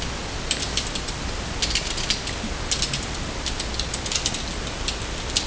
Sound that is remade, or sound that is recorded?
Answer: recorded